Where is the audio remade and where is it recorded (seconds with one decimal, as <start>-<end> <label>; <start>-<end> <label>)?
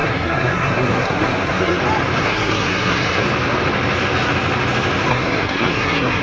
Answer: 0.0-1.8 remade; 1.8-2.2 recorded; 2.2-3.2 remade; 3.2-5.1 recorded; 5.1-6.2 remade